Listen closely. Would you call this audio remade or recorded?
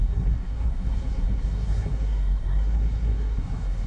remade